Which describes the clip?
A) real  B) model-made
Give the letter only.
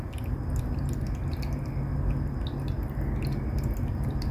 A